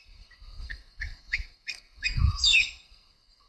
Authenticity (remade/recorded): remade